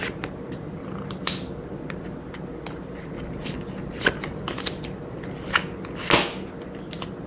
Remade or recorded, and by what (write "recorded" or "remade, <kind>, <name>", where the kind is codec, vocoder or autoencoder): recorded